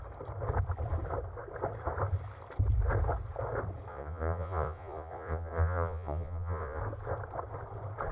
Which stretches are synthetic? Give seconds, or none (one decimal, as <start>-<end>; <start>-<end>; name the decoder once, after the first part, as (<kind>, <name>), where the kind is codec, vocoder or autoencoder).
3.9-6.8 (vocoder, Vocos)